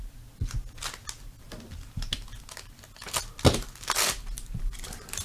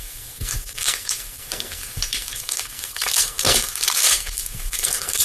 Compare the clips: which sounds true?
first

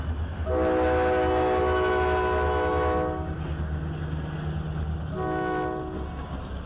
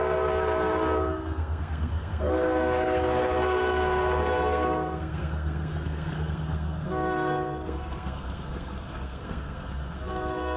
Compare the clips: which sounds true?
first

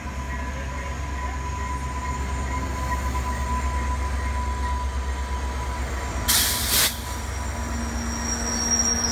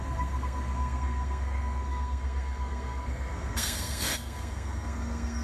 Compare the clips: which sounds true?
first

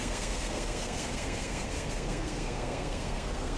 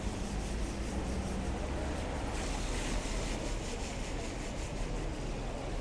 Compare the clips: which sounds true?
second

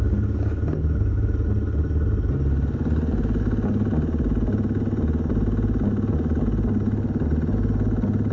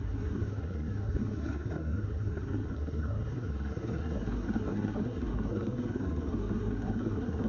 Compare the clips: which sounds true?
first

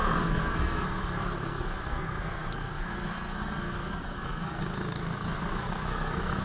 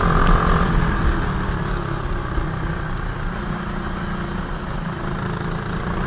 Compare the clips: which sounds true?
second